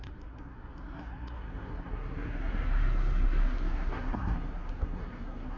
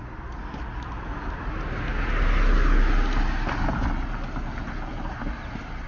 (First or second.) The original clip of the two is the second